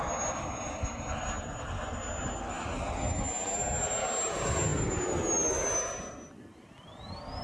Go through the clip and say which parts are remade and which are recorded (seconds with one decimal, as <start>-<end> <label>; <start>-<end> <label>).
0.0-7.4 recorded